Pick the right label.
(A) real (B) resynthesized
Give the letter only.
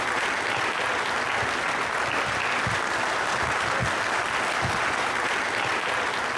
A